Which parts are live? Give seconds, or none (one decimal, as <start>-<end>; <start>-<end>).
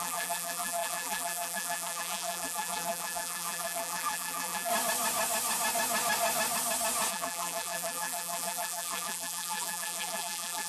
4.7-7.1